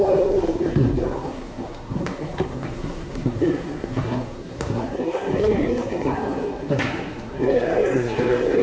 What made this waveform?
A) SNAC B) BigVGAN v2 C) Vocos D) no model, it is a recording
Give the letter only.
A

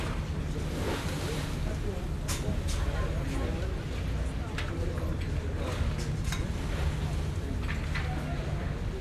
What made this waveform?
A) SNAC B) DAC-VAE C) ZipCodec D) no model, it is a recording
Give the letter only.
D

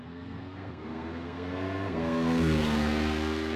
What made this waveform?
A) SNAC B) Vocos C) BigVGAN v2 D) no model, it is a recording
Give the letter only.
A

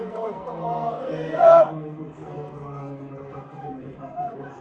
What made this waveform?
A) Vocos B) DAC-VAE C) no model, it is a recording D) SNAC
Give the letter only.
D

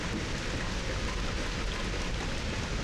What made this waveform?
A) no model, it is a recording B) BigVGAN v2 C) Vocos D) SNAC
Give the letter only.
A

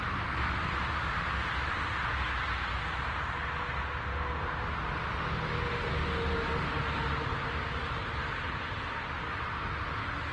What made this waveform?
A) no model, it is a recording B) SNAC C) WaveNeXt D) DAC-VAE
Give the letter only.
A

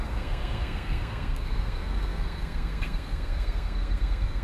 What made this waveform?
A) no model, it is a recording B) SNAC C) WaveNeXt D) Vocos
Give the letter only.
B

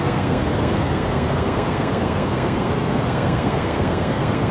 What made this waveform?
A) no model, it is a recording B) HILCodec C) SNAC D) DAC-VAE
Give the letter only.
C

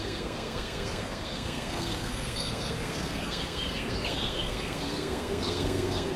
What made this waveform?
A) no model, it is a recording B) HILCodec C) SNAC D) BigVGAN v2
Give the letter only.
C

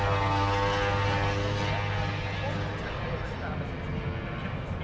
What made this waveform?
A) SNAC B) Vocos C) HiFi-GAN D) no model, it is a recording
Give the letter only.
D